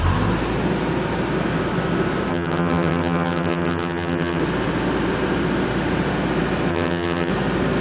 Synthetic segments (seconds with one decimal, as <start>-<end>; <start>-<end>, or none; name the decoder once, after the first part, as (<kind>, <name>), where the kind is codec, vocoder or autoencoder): 2.3-4.4 (vocoder, HiFi-GAN); 6.7-7.3